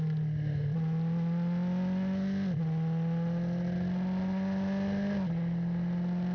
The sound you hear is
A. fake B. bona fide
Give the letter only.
B